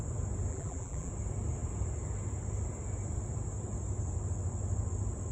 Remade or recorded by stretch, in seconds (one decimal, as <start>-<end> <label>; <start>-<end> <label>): 0.0-0.5 recorded; 0.5-1.1 remade; 1.1-5.3 recorded